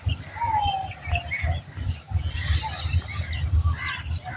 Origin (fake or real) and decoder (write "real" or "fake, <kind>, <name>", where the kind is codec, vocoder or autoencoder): real